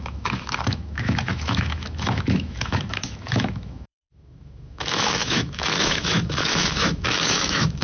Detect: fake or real fake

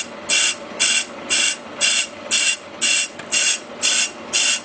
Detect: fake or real real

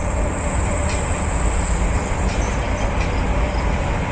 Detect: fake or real fake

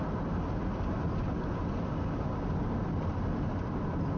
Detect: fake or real real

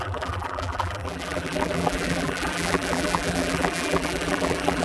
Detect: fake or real fake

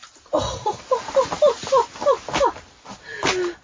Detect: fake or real real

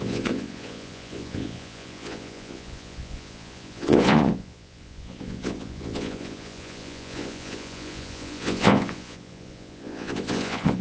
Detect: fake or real fake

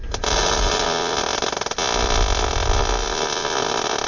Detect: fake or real real